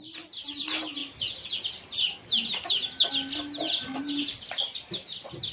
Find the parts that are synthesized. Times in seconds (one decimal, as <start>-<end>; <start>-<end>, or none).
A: none